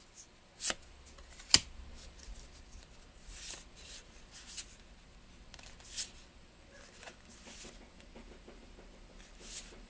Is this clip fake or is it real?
real